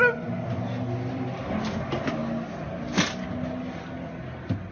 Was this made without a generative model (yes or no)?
yes